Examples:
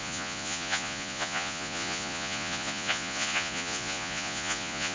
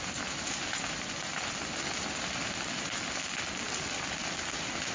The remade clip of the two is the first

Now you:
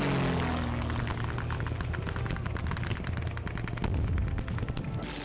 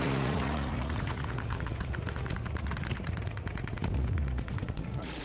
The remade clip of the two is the second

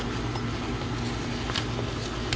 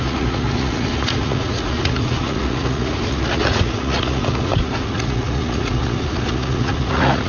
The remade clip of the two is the second